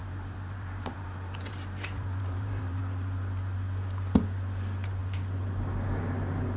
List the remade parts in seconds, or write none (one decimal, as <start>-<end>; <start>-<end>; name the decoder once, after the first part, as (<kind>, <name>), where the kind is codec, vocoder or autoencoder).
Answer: 0.0-2.8 (vocoder, BigVGAN v2)